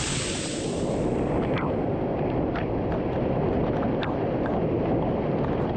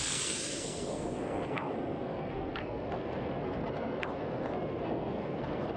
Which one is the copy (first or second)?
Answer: second